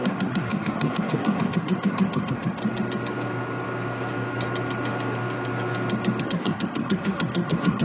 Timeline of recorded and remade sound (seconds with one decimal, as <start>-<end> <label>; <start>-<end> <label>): 0.0-2.6 remade; 2.6-6.2 recorded; 6.2-7.8 remade